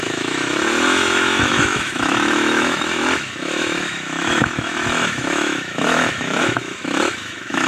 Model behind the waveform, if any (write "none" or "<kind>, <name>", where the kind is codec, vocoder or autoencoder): autoencoder, DAC-VAE